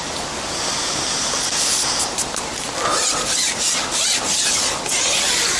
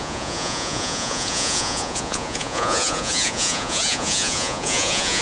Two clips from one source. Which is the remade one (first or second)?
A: second